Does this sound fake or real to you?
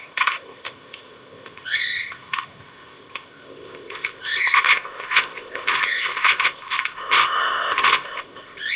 fake